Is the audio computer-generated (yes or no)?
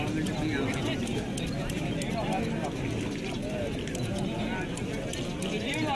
no